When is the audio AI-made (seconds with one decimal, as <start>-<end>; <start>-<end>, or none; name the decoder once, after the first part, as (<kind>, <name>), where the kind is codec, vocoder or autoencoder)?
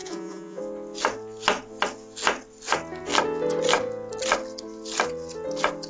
0.0-0.6 (vocoder, Vocos)